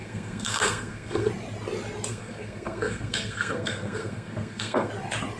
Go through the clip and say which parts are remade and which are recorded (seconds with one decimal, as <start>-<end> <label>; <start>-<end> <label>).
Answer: 0.0-1.3 remade; 1.3-2.1 recorded; 2.1-4.9 remade; 4.9-5.4 recorded